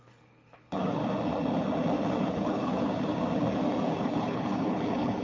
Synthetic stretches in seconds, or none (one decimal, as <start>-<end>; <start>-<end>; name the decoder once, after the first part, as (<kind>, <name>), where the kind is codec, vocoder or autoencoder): 0.0-1.0 (codec, HILCodec); 2.2-2.7; 4.0-5.2